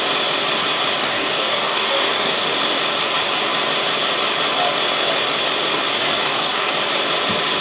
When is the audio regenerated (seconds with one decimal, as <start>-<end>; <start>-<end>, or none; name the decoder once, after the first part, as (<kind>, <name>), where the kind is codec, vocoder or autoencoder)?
1.0-2.5 (codec, DAC); 5.9-6.7